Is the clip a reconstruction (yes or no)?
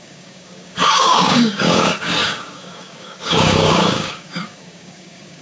yes